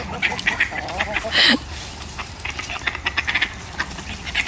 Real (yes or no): yes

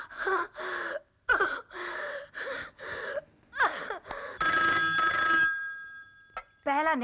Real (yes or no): yes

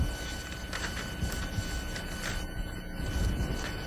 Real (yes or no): yes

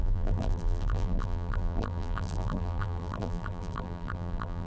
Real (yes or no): no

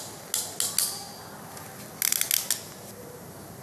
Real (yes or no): yes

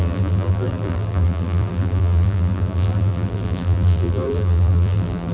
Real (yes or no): no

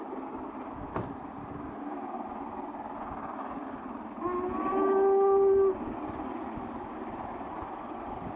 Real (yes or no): yes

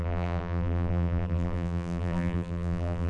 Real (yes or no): no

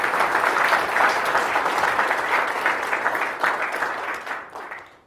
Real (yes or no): yes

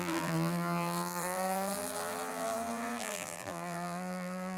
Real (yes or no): no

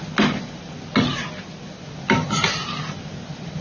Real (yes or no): yes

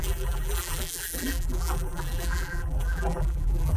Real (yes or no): no